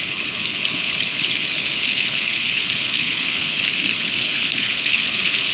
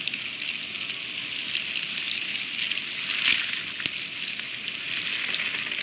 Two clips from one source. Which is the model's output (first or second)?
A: first